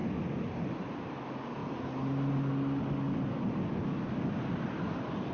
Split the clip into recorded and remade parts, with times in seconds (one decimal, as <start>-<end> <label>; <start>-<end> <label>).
0.0-5.3 recorded